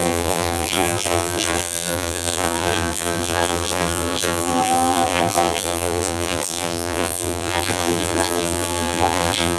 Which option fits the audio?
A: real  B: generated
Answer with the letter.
B